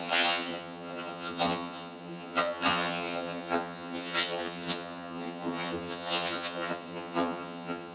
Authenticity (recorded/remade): remade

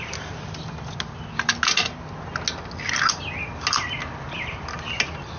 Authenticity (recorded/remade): recorded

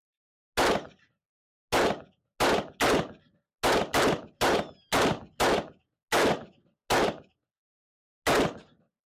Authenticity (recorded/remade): recorded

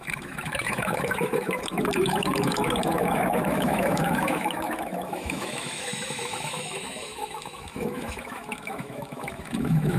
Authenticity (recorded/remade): remade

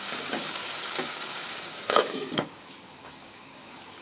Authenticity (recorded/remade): remade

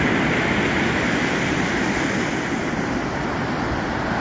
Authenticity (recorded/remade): recorded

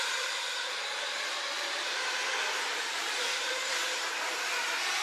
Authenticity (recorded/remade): recorded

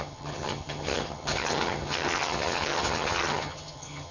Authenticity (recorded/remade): remade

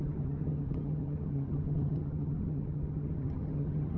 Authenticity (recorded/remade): remade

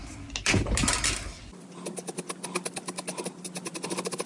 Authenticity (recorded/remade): recorded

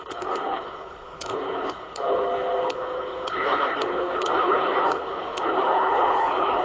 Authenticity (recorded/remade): remade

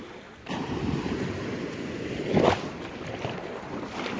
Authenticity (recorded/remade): recorded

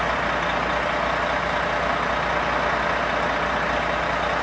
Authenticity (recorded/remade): recorded